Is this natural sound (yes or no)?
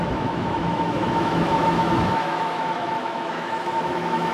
no